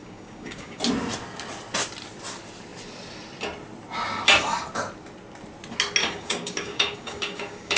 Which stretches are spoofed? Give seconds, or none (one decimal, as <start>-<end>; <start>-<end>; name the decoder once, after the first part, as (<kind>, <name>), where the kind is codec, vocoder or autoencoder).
0.0-0.8 (codec, DAC); 6.0-7.8